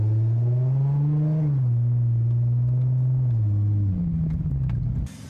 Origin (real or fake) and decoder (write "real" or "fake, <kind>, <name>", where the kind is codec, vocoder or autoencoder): real